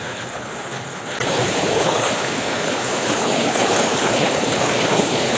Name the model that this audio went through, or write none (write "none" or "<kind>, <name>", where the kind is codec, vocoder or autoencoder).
codec, HILCodec